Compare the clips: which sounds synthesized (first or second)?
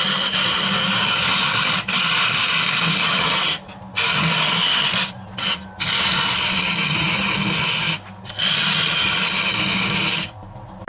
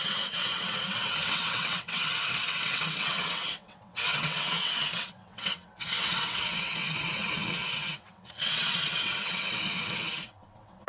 second